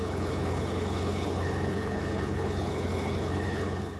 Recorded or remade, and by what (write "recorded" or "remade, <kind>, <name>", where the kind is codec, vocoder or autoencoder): remade, codec, HILCodec